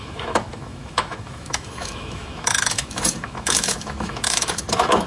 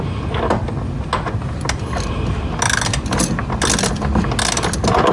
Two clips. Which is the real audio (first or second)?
second